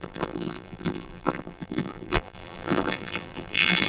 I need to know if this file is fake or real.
fake